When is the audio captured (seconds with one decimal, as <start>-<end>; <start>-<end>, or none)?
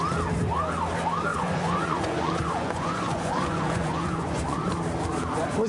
0.0-1.3; 4.7-5.7